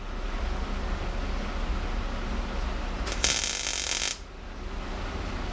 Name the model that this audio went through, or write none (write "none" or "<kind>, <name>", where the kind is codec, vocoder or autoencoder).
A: none